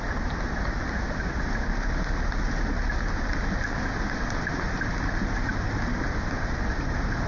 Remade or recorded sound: recorded